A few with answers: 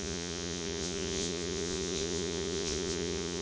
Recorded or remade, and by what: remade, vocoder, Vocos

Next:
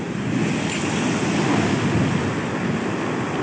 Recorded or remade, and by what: recorded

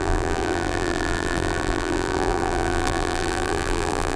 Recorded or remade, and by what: remade, vocoder, BigVGAN v2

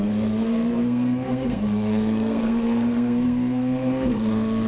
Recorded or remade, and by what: remade, codec, SNAC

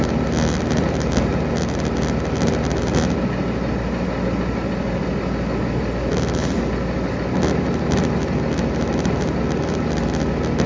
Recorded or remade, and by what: recorded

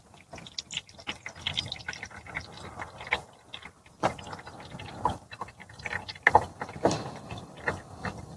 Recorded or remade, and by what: recorded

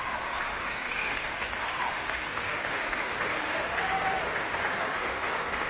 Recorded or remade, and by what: remade, autoencoder, DAC-VAE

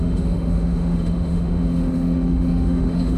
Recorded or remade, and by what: remade, autoencoder, DAC-VAE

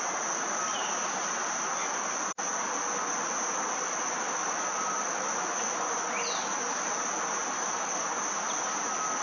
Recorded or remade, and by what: recorded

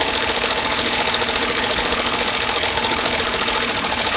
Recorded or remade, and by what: remade, codec, HILCodec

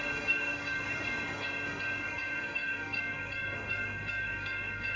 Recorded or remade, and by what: remade, codec, SNAC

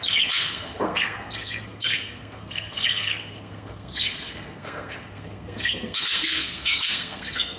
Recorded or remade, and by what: remade, codec, SNAC